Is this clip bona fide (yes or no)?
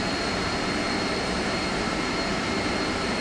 no